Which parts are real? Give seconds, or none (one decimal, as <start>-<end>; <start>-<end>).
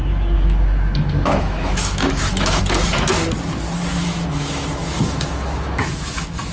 2.6-4.0